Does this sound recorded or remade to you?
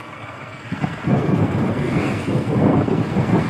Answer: remade